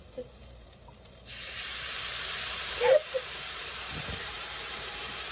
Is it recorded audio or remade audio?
remade